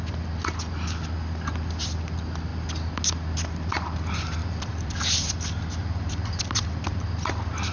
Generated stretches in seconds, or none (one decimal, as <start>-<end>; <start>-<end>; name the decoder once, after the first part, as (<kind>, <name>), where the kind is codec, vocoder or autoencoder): 4.4-7.0 (vocoder, BigVGAN v2)